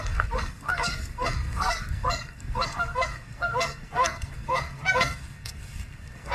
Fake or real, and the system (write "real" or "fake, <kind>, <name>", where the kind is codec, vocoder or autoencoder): fake, codec, SNAC